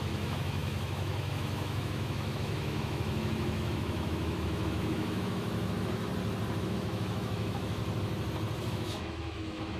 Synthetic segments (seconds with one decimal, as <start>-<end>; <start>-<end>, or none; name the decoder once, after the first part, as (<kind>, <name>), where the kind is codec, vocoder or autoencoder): 0.0-6.1 (autoencoder, DAC-VAE); 6.6-7.8; 8.7-9.8